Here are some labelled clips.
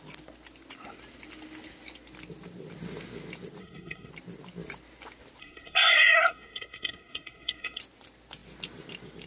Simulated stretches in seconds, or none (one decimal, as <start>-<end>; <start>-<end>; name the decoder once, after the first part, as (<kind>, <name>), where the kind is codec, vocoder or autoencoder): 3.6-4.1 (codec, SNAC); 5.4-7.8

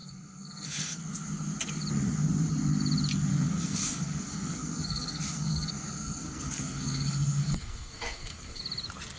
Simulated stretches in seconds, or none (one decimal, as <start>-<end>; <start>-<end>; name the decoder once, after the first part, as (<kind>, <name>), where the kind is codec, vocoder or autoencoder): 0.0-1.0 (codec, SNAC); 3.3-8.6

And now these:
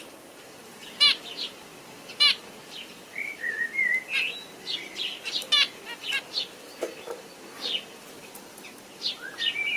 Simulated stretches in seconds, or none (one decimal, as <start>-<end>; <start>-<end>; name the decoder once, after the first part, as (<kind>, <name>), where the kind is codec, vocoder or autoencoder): none

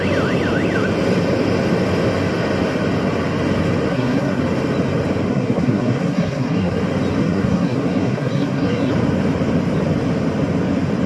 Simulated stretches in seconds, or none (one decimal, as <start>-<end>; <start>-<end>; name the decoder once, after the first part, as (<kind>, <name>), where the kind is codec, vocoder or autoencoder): 3.9-4.4 (codec, SNAC); 5.3-6.8; 7.2-8.9

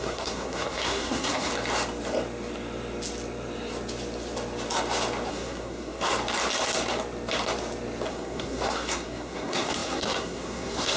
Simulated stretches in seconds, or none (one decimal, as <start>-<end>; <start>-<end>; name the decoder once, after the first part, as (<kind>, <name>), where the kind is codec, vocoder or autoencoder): 0.0-1.5 (codec, SNAC); 5.3-6.1; 8.1-11.0